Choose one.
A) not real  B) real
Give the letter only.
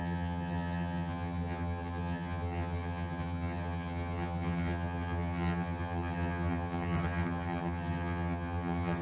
A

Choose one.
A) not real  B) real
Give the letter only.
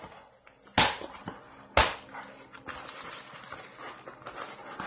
B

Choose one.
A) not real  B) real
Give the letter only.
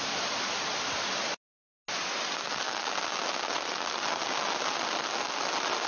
B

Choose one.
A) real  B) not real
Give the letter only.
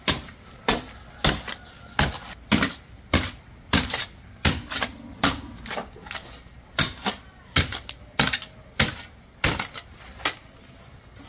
A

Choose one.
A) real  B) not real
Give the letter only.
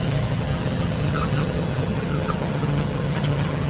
B